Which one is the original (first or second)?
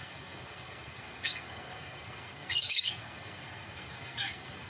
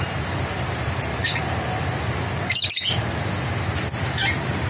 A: second